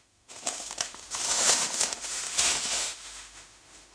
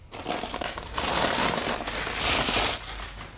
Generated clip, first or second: first